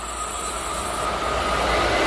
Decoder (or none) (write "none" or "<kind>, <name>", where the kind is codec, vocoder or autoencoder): none